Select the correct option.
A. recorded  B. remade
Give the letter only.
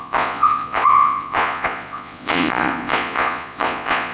B